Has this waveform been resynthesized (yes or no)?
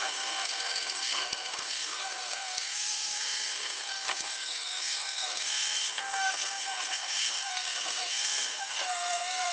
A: yes